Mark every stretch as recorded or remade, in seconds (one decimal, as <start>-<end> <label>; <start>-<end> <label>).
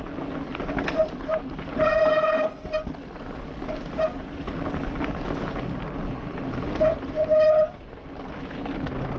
0.0-9.2 recorded